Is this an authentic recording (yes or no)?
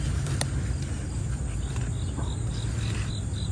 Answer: yes